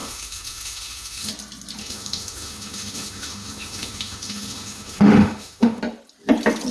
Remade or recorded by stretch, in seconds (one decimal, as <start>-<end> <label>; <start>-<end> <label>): 0.0-1.3 remade; 1.3-1.8 recorded; 1.8-5.8 remade; 5.8-6.7 recorded